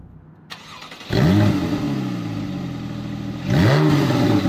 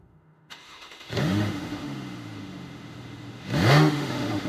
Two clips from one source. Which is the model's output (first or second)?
second